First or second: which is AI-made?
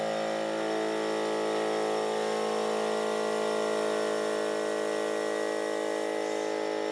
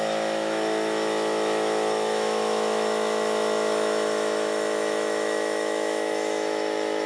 second